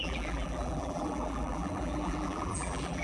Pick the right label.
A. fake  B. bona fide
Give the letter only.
A